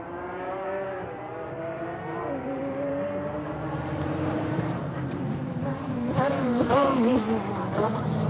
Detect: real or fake fake